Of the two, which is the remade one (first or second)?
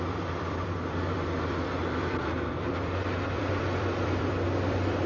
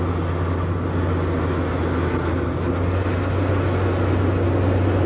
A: first